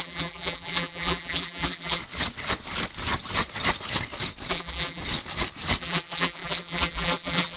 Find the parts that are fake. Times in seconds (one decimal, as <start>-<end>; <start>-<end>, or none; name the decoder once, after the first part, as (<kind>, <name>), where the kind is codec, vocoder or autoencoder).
0.0-2.0 (vocoder, BigVGAN v2); 4.5-5.0; 5.8-7.6